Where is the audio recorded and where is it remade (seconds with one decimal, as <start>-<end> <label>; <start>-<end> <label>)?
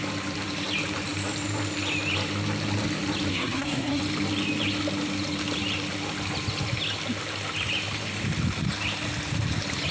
0.0-3.3 recorded; 3.3-4.0 remade; 4.0-9.9 recorded